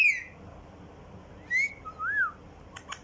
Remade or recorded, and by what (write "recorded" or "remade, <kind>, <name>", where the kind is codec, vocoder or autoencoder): recorded